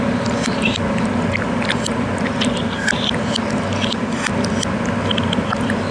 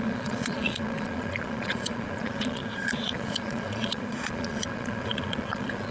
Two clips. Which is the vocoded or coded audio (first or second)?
second